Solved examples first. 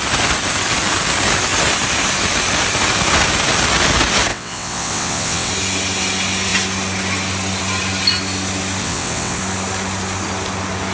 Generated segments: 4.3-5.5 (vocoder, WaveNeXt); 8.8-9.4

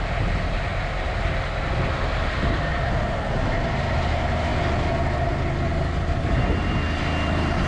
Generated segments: 5.7-6.7 (vocoder, BigVGAN v2)

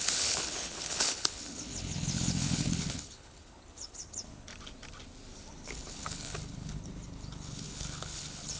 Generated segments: 0.0-4.5 (codec, HILCodec); 5.5-8.6

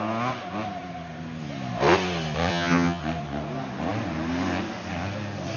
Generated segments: 2.5-3.0 (vocoder, HiFi-GAN)

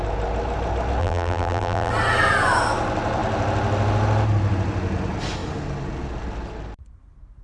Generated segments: 1.0-1.9 (vocoder, BigVGAN v2)